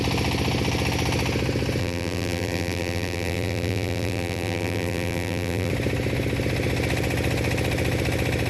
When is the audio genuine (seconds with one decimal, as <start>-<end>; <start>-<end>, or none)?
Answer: 0.0-1.8; 5.7-8.5